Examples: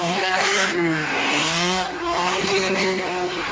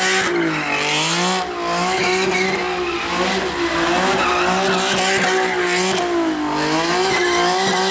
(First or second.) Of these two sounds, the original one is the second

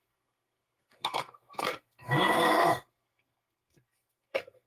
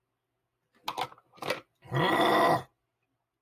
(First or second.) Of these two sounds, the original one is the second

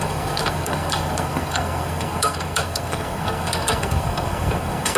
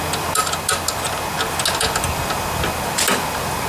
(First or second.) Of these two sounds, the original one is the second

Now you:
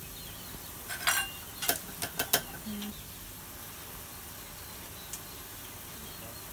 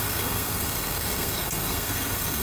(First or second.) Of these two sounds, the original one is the first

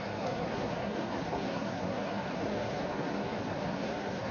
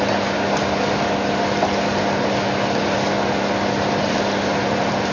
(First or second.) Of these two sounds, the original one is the second